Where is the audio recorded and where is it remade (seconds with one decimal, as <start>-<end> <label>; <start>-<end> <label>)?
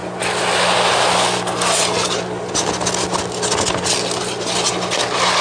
0.0-5.4 recorded